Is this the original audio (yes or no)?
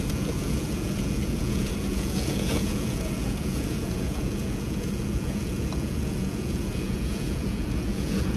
no